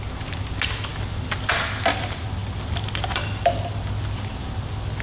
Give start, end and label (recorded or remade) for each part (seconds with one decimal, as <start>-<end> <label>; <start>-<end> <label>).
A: 0.0-5.0 recorded